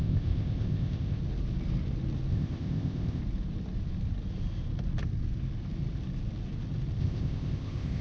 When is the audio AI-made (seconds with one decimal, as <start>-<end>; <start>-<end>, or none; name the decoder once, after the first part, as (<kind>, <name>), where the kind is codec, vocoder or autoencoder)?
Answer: 0.0-1.2 (codec, ZipCodec); 2.3-3.2; 7.0-8.0

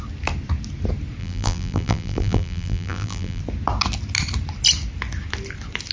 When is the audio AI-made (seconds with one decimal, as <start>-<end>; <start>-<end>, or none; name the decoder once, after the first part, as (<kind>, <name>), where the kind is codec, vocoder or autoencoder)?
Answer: 1.2-3.4 (vocoder, BigVGAN v2)

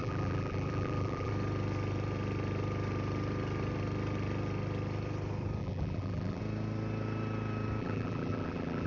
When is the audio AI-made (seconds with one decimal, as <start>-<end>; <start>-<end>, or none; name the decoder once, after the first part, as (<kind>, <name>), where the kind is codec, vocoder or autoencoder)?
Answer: 0.0-1.3 (vocoder, BigVGAN v2); 5.6-6.4; 7.8-8.9

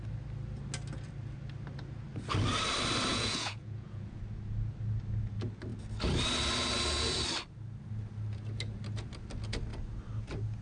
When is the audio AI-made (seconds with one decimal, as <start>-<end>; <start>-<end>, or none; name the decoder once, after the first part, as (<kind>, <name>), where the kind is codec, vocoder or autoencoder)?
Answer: 3.1-4.2 (vocoder, Vocos)

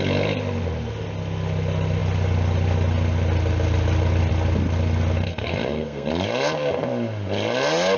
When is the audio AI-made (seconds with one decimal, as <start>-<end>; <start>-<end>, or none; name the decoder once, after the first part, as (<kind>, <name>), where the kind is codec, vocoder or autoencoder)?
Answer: 5.3-6.1 (codec, SNAC)